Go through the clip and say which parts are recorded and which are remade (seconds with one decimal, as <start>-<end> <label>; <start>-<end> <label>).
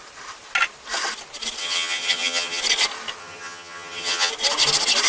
0.0-1.6 recorded; 1.6-2.6 remade; 2.6-3.2 recorded; 3.2-4.3 remade; 4.3-5.1 recorded